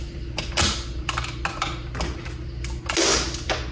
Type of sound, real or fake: real